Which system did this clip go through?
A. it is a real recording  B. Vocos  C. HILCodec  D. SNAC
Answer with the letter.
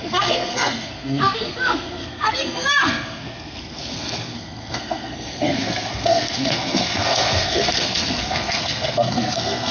D